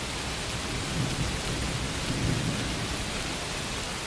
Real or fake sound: real